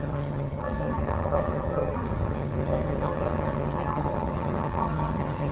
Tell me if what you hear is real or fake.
fake